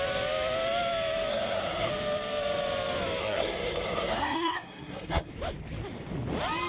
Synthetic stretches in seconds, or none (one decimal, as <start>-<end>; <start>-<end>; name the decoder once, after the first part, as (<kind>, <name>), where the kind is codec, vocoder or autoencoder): 1.3-1.9 (codec, SNAC); 3.2-5.3